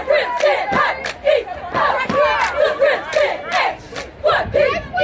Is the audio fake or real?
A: real